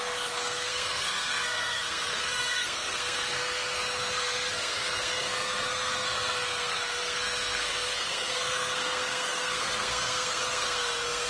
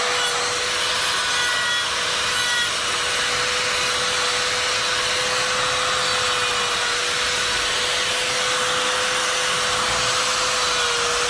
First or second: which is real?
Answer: second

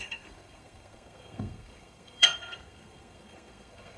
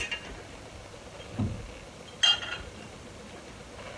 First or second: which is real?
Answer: second